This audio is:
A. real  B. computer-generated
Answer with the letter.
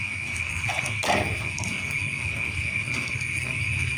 B